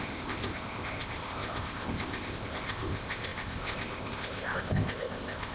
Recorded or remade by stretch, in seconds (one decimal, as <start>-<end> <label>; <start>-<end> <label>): 0.0-5.5 remade